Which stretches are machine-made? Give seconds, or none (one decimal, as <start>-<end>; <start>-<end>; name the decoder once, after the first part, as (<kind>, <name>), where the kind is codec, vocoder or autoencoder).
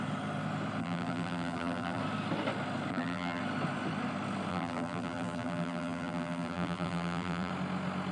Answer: 0.8-2.0 (vocoder, BigVGAN v2); 2.9-3.4; 4.5-7.5